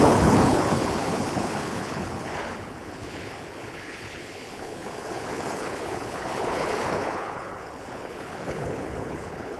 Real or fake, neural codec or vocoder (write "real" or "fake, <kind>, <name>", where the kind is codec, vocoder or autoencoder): fake, codec, HILCodec